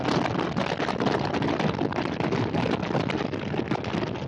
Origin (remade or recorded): recorded